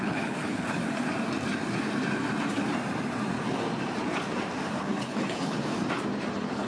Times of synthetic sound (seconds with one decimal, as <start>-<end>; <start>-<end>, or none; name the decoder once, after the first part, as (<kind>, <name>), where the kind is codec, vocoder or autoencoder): 0.0-0.8 (codec, HILCodec); 4.8-5.7; 6.3-6.7